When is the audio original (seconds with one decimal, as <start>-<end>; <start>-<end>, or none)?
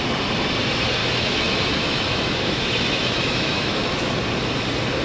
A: 0.0-1.0; 4.0-5.0